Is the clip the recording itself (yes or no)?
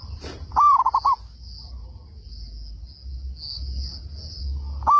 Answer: yes